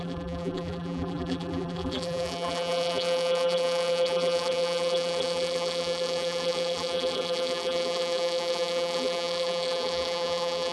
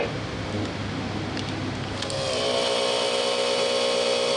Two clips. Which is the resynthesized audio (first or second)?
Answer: first